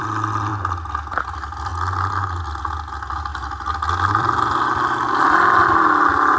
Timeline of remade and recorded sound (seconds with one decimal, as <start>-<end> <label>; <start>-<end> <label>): 0.0-0.5 remade; 0.5-1.2 recorded; 1.2-1.7 remade; 1.7-2.4 recorded; 2.4-3.3 remade; 3.3-3.9 recorded; 3.9-6.4 remade